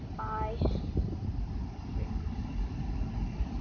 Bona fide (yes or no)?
yes